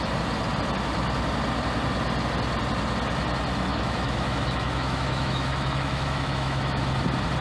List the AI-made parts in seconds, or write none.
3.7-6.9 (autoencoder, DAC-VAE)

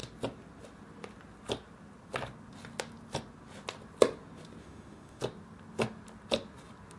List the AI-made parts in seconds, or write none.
4.6-5.2 (autoencoder, DAC-VAE)

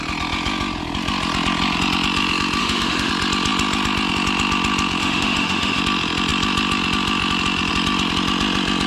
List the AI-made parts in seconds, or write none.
2.6-3.1 (autoencoder, DAC-VAE); 5.0-5.8

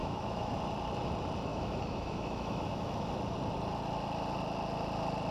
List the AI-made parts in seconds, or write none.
0.0-0.5 (autoencoder, DAC-VAE); 1.5-3.1

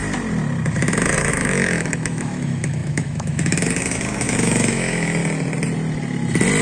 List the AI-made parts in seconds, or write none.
0.8-5.2 (autoencoder, DAC-VAE)

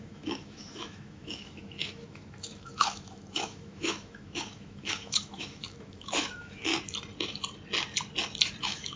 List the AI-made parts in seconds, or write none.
0.0-6.7 (autoencoder, DAC-VAE); 8.6-9.0